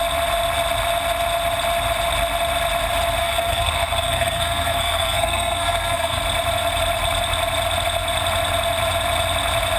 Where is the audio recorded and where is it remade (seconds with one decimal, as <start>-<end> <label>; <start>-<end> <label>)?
0.0-3.2 recorded; 3.2-6.2 remade; 6.2-9.8 recorded

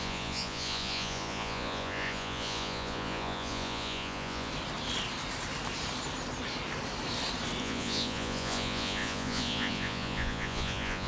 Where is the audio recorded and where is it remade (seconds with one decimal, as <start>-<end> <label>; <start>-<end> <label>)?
0.0-4.5 remade; 4.5-7.6 recorded; 7.6-11.1 remade

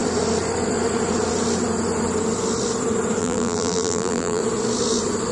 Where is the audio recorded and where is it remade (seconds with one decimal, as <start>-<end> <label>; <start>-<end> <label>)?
0.0-3.2 recorded; 3.2-4.4 remade; 4.4-5.3 recorded

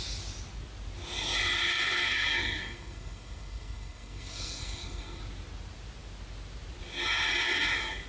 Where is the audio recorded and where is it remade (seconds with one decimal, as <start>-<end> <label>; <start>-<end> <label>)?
0.0-1.7 recorded; 1.7-5.2 remade; 5.2-8.1 recorded

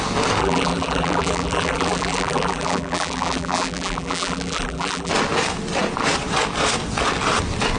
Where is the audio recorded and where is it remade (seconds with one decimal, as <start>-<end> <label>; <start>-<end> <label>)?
0.0-0.4 recorded; 0.4-5.1 remade; 5.1-7.8 recorded

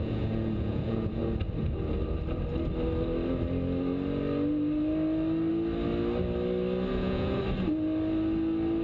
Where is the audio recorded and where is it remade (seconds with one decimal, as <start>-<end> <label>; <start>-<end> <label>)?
0.0-1.2 remade; 1.2-6.9 recorded; 6.9-7.4 remade; 7.4-8.8 recorded